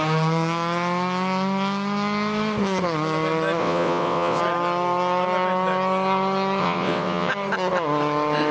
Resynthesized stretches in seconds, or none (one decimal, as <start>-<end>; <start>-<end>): 3.6-4.4; 6.6-7.3